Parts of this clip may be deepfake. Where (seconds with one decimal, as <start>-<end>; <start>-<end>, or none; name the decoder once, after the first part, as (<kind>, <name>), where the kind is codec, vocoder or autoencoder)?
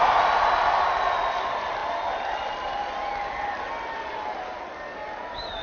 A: none